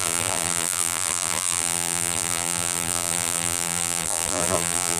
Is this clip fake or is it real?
fake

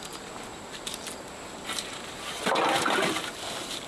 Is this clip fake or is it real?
real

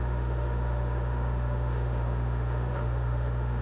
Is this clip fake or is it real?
fake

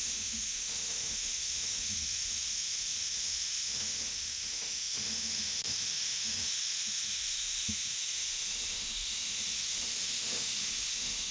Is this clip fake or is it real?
fake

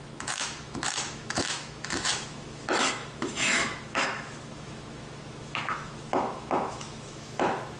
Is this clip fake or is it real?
fake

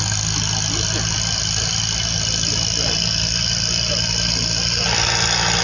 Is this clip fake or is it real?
real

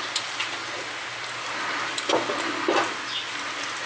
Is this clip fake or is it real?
real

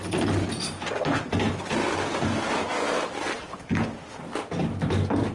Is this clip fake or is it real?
real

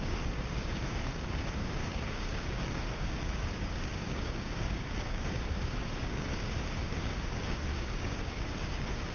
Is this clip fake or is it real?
fake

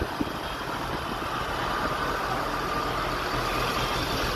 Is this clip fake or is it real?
real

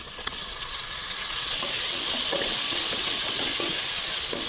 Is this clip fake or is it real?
fake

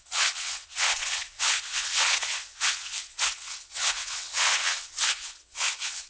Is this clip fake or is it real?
fake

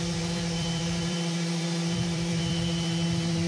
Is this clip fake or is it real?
fake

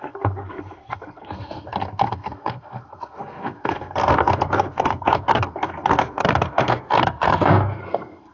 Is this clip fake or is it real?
fake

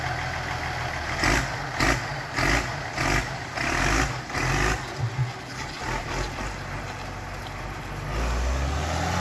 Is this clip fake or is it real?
real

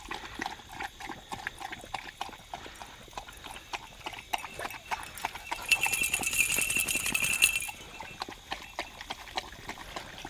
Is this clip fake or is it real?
real